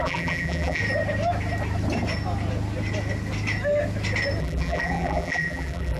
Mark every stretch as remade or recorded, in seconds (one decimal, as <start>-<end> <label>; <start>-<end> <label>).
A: 0.0-0.8 remade; 0.8-4.4 recorded; 4.4-6.0 remade